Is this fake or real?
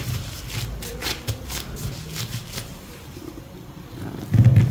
real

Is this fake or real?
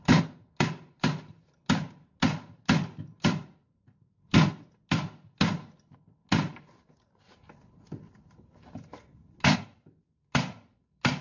real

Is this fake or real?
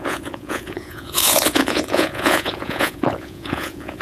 fake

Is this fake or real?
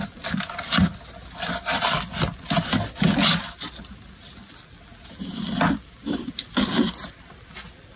real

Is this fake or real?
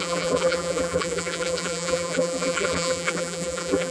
fake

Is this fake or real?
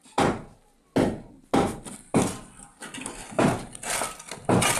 real